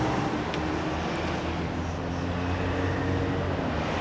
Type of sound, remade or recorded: recorded